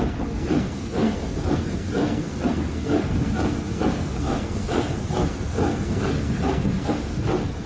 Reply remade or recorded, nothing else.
remade